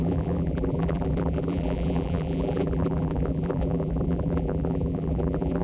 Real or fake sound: fake